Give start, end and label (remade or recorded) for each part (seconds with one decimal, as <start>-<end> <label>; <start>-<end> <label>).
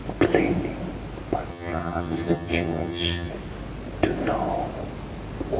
0.0-1.5 recorded; 1.5-3.3 remade; 3.3-5.6 recorded